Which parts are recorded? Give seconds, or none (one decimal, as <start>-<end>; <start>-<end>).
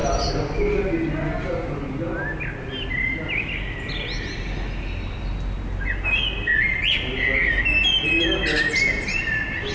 0.0-9.7